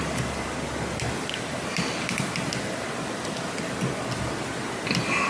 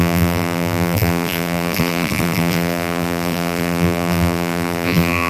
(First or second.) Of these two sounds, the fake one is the second